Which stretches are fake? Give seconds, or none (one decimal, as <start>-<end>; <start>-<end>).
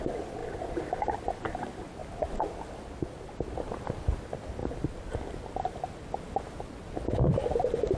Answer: 0.4-1.6; 2.0-3.1; 4.6-5.4